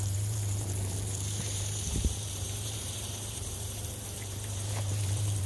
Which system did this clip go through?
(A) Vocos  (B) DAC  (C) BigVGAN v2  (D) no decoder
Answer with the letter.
C